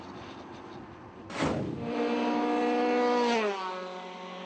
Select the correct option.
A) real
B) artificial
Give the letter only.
A